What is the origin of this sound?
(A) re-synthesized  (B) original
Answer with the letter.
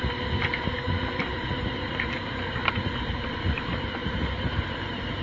B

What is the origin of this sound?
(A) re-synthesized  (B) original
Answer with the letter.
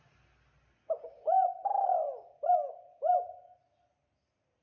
B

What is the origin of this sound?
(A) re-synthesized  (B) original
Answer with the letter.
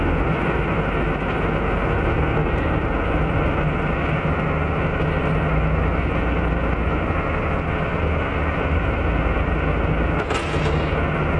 B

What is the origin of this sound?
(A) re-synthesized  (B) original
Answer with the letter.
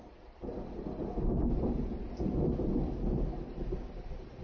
B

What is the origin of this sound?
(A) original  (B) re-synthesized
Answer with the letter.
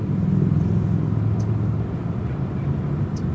A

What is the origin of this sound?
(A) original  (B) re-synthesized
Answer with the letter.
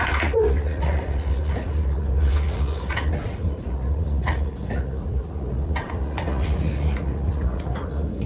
B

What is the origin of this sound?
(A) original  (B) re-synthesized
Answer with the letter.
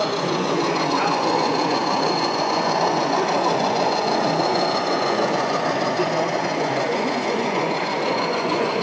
B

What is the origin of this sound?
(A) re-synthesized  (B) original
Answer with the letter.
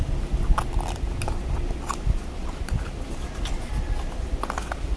B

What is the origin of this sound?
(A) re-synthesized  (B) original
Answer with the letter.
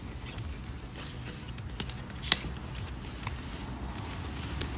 B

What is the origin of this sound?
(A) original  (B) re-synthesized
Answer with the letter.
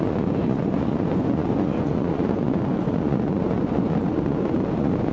B